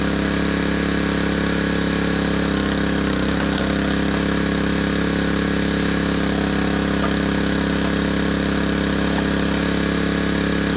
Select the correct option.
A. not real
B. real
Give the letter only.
B